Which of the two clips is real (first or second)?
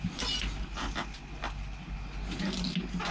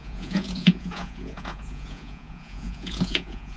first